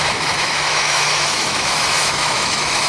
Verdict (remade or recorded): remade